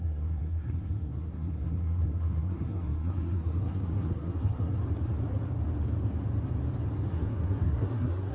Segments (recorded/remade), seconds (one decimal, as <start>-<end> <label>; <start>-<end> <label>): 0.0-4.8 remade; 4.8-7.1 recorded; 7.1-8.3 remade